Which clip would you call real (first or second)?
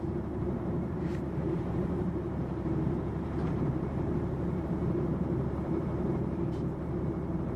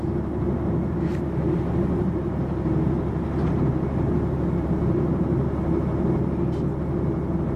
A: second